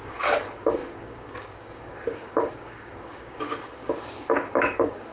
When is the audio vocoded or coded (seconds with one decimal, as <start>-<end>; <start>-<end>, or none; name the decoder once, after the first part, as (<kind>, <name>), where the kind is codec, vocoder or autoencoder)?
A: 0.0-5.1 (codec, DAC)